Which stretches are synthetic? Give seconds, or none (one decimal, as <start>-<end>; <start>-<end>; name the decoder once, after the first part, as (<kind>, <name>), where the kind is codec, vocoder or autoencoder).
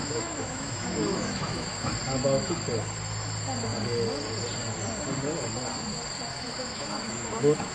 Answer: 0.0-1.9 (autoencoder, DAC-VAE); 6.3-7.7